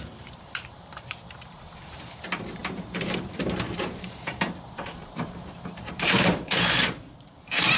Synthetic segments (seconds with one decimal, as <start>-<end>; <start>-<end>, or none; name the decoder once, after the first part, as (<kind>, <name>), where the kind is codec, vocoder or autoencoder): 0.0-7.8 (vocoder, BigVGAN v2)